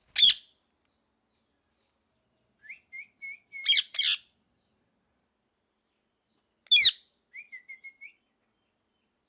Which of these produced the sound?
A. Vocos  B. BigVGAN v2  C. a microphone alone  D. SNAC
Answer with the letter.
C